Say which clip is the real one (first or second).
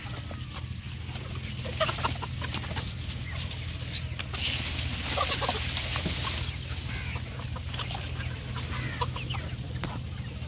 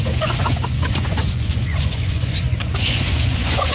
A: first